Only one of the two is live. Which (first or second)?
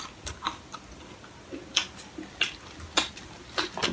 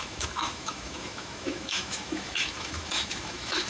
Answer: first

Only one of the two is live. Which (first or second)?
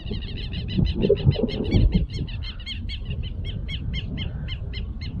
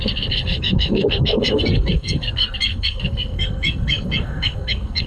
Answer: first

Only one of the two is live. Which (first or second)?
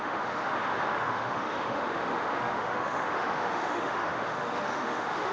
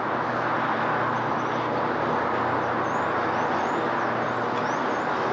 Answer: second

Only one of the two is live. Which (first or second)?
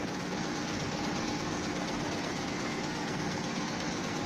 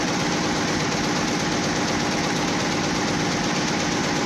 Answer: second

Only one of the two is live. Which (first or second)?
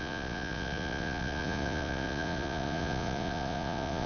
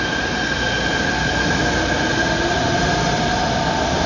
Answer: second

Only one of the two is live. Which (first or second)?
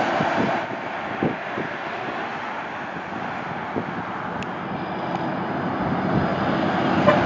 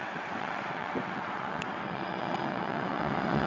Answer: first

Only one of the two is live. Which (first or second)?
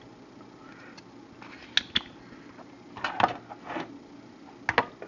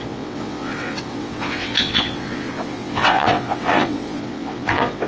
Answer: first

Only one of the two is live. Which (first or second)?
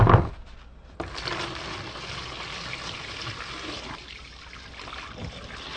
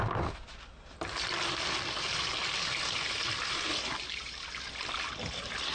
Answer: first